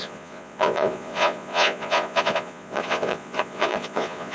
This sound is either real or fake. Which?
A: fake